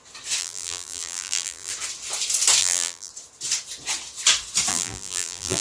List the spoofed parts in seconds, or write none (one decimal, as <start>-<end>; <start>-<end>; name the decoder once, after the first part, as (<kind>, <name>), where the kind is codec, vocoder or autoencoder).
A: 0.4-1.7 (vocoder, BigVGAN v2); 2.6-3.1; 4.7-5.6